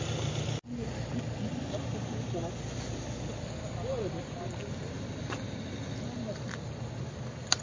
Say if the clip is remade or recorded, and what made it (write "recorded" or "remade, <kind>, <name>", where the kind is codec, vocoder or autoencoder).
recorded